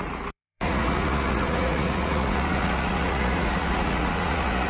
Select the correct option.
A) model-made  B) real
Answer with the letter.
A